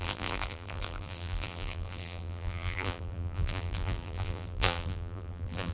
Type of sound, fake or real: fake